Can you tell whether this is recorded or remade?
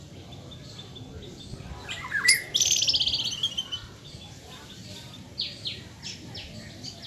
recorded